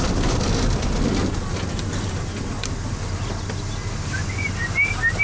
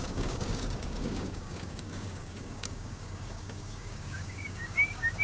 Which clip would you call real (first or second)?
first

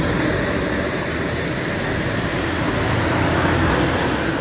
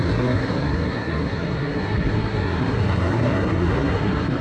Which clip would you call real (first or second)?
first